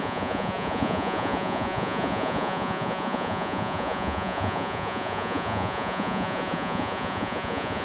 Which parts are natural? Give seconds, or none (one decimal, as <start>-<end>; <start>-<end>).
none